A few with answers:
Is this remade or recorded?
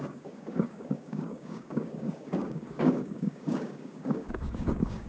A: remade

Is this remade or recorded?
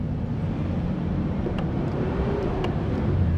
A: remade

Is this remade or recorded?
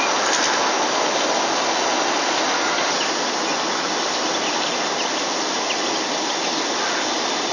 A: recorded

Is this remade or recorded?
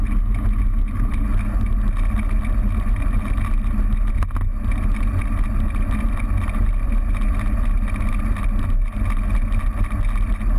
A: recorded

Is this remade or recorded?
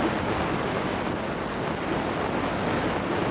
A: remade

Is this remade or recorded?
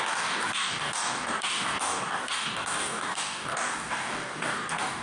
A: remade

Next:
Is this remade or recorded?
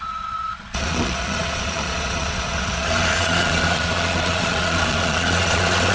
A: remade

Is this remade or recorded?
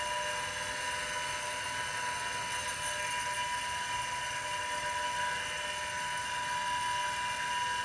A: recorded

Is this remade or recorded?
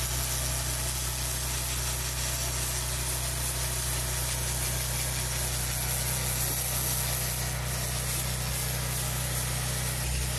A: recorded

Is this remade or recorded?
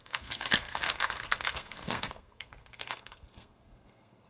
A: remade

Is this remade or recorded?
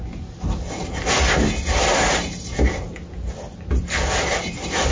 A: recorded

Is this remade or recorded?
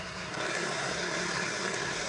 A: remade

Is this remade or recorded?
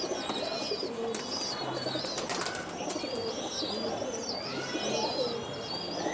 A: recorded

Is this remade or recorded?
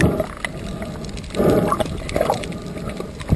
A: recorded